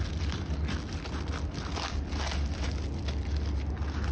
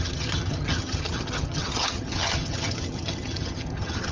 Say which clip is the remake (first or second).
second